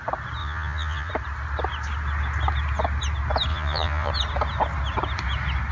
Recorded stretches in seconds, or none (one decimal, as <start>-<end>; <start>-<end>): 0.0-0.4; 1.1-3.5; 4.1-5.7